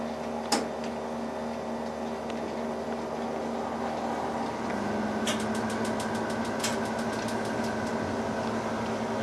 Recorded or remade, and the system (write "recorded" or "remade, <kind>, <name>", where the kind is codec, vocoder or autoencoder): recorded